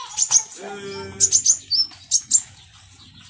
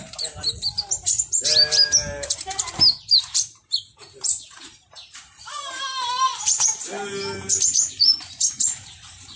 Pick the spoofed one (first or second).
second